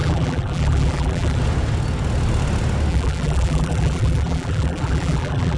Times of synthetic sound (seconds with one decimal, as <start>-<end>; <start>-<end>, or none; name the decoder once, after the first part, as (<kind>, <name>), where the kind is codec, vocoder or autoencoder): 0.0-1.4 (vocoder, BigVGAN v2); 2.9-5.6